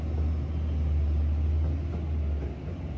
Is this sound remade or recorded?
recorded